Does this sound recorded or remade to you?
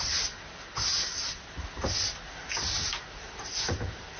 recorded